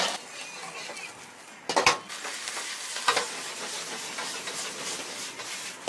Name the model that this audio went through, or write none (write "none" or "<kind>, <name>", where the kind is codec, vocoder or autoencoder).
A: none